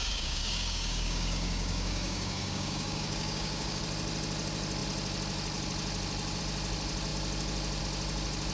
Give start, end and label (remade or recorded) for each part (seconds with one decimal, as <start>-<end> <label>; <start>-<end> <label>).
0.0-3.8 remade; 3.8-8.5 recorded

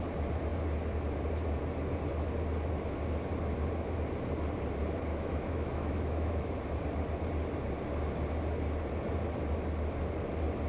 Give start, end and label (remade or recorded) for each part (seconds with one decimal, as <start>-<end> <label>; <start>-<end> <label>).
0.0-5.1 recorded; 5.1-6.5 remade; 6.5-10.7 recorded